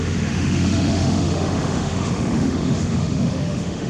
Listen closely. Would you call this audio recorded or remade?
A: remade